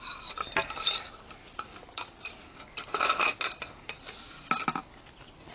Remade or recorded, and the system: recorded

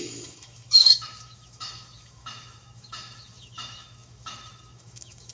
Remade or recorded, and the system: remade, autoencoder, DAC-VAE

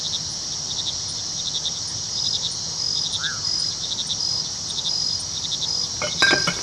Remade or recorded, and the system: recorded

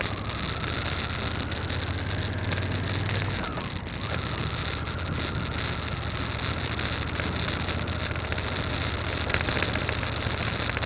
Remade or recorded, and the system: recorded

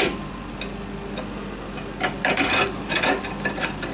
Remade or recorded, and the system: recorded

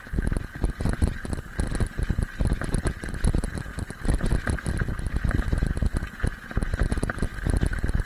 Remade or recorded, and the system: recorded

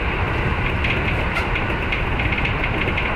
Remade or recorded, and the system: recorded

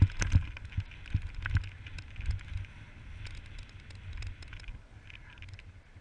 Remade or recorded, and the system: recorded